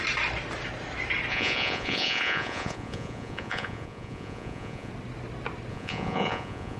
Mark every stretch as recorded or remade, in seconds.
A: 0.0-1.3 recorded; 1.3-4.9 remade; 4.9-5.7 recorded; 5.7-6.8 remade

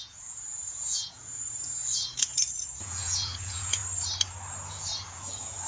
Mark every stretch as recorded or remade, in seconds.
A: 0.0-3.8 remade; 3.8-4.7 recorded; 4.7-5.7 remade

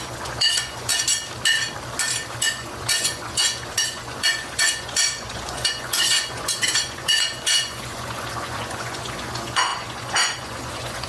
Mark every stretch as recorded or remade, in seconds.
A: 0.0-0.9 remade; 0.9-2.3 recorded; 2.3-11.1 remade

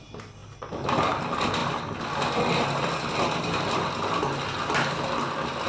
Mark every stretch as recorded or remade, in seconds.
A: 0.0-5.7 recorded

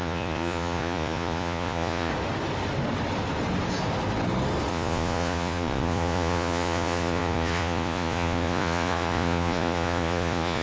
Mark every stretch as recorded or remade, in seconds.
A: 0.0-2.1 remade; 2.1-4.7 recorded; 4.7-10.6 remade

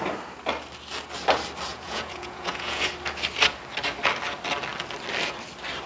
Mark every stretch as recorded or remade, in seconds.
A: 0.0-1.7 recorded; 1.7-2.9 remade; 2.9-5.9 recorded